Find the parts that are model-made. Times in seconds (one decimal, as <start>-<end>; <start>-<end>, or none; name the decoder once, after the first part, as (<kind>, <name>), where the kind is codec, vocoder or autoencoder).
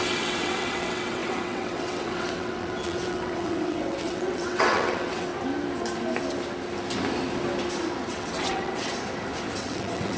0.0-5.3 (vocoder, WaveNeXt); 8.1-8.9; 9.6-10.2